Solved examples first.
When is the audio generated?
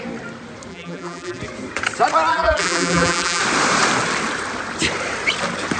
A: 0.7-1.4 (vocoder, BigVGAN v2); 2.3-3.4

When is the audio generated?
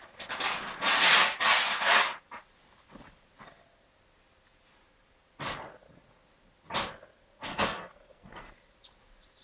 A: 7.5-8.5 (codec, SNAC)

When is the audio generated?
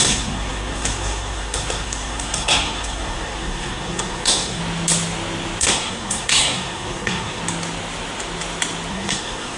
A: 0.0-4.6 (codec, SNAC); 5.6-7.4; 8.9-9.6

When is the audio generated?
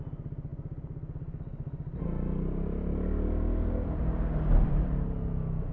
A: none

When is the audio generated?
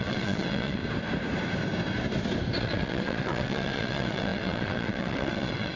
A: 0.0-0.8 (vocoder, WaveNeXt); 2.6-5.8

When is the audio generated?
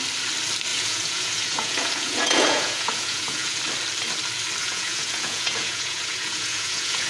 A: 0.7-3.6 (vocoder, Vocos); 4.6-7.1